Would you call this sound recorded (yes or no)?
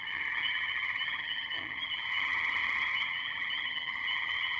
no